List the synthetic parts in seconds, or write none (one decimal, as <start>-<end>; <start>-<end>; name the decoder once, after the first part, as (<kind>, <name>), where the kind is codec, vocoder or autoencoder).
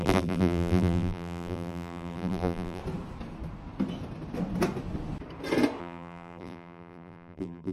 0.0-2.8 (vocoder, BigVGAN v2); 5.8-7.7